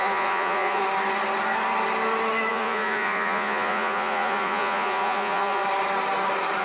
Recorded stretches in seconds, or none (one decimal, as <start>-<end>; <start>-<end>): 0.8-2.5; 5.6-6.6